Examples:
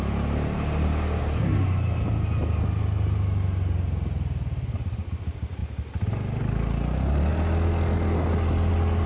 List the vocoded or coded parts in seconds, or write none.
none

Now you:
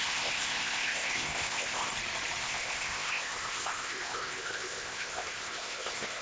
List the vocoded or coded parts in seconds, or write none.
0.0-1.9 (codec, ZipCodec); 2.4-6.2

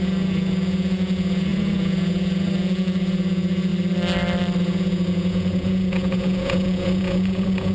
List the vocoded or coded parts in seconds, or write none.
0.0-3.7 (vocoder, Vocos); 4.6-7.7

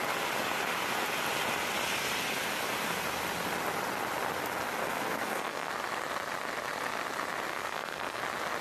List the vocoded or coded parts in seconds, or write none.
4.8-5.7 (codec, SNAC); 7.5-8.2

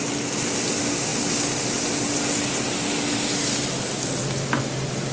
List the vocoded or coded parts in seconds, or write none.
none